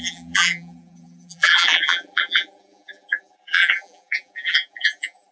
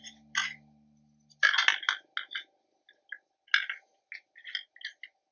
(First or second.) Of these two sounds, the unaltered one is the second